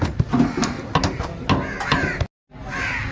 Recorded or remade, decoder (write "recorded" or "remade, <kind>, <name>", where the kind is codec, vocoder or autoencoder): recorded